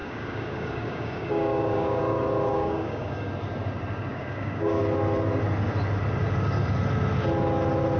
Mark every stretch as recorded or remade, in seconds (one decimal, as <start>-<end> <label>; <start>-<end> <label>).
0.0-2.0 remade; 2.0-2.5 recorded; 2.5-3.3 remade; 3.3-4.1 recorded; 4.1-4.8 remade; 4.8-8.0 recorded